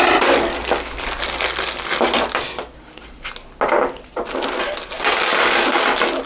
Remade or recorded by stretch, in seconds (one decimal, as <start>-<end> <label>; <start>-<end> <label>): 0.0-6.3 recorded